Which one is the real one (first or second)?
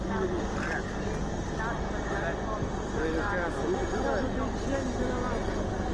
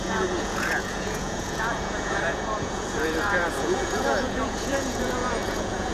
first